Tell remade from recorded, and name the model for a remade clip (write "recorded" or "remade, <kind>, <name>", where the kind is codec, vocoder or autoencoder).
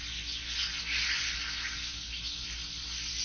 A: recorded